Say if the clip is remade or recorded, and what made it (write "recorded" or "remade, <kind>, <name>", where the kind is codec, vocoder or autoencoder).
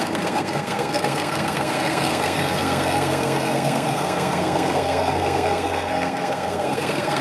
remade, codec, SNAC